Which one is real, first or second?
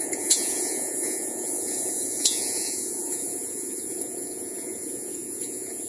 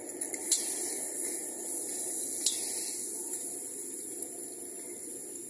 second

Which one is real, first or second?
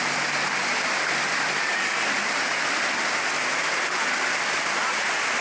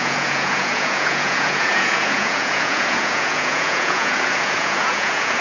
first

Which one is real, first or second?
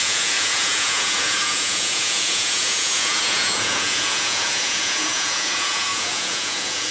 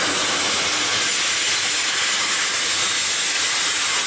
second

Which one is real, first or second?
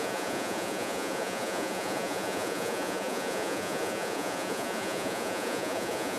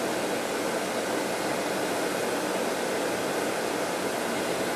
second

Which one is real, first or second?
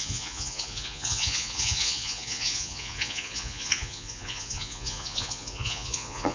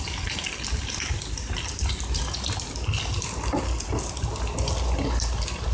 second